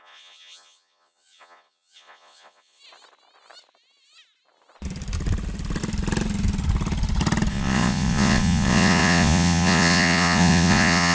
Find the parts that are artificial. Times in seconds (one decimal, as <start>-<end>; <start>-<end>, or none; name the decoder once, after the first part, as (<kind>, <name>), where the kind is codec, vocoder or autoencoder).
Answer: 0.0-2.8 (vocoder, Vocos); 7.5-11.1